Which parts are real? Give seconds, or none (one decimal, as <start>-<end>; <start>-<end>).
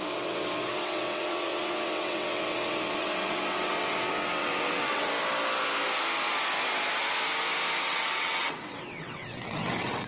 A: 5.1-7.8